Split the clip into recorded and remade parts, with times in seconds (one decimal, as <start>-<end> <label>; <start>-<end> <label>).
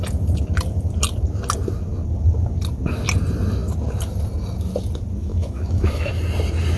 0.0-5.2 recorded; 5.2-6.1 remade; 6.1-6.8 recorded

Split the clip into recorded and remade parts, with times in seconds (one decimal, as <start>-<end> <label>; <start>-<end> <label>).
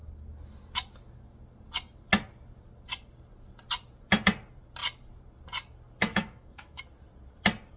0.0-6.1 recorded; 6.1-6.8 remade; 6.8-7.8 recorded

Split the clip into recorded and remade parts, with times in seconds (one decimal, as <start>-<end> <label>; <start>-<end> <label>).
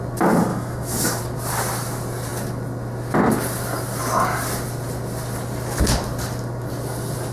0.0-0.5 recorded; 0.5-1.2 remade; 1.2-7.3 recorded